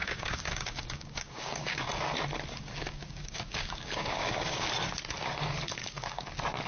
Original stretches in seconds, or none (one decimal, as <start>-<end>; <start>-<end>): 1.9-2.8; 4.7-5.8; 6.3-6.7